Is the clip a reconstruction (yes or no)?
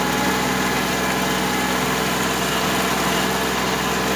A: no